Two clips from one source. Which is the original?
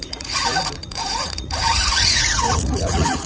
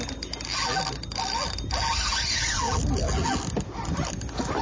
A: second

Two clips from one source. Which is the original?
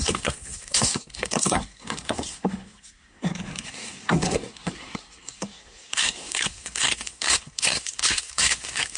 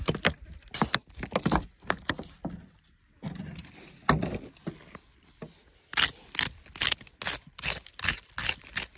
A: second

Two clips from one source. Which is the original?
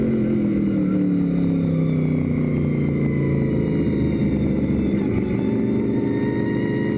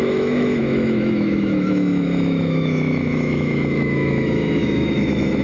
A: first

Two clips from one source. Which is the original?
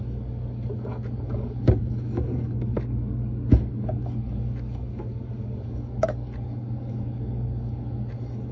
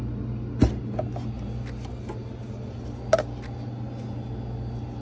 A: second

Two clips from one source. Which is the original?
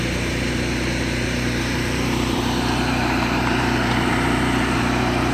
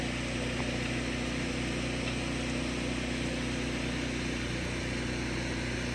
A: second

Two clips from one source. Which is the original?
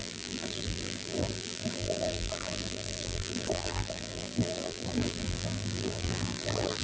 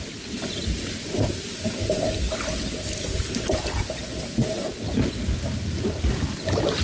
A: second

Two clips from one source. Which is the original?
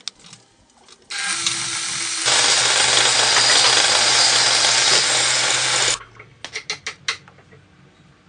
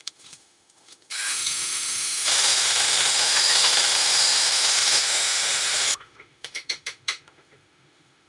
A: first